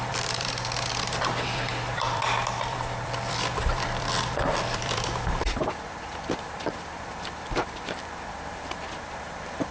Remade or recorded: remade